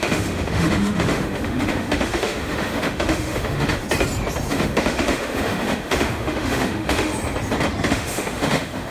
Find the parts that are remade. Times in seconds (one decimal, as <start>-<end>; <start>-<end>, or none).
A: 0.0-3.8; 4.5-7.1; 7.9-8.9